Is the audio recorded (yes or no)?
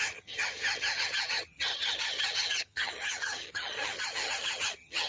no